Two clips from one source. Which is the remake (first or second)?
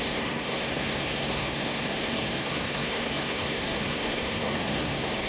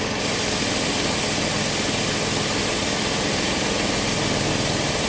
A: first